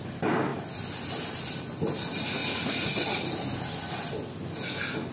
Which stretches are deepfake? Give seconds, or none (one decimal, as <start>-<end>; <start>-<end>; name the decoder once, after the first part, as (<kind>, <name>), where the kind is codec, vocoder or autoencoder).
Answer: 2.4-3.2 (vocoder, Vocos)